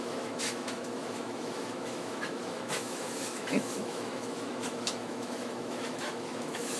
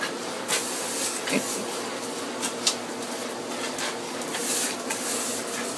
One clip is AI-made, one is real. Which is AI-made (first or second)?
first